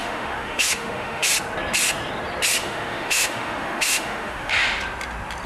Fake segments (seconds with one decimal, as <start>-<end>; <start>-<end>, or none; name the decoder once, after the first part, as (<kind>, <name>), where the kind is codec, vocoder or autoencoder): 0.0-1.3 (autoencoder, DAC-VAE); 2.6-4.5